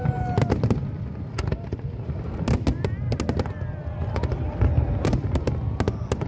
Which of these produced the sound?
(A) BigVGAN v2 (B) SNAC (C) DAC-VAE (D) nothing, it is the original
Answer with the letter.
D